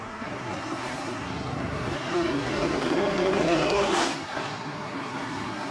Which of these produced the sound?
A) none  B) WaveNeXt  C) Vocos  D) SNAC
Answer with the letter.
D